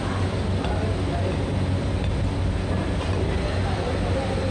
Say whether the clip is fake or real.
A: real